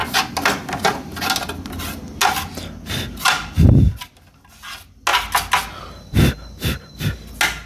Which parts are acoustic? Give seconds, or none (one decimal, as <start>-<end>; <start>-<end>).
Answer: 0.0-7.7